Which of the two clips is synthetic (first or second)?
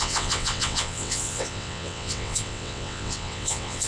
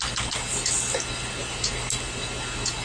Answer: first